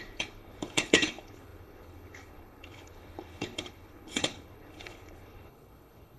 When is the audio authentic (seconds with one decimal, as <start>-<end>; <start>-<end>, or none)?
none